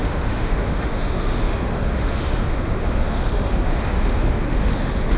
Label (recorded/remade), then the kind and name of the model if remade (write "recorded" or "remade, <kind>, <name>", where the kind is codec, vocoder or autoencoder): remade, autoencoder, DAC-VAE